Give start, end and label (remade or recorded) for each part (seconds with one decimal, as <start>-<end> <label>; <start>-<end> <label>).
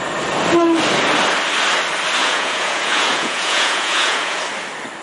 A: 0.0-2.2 recorded; 2.2-4.4 remade; 4.4-5.0 recorded